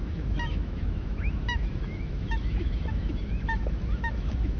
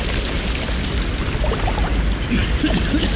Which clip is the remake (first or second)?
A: first